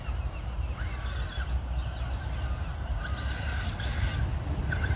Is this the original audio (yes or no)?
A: yes